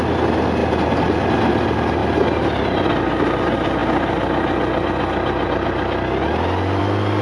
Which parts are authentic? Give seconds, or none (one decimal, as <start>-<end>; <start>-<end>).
0.0-7.2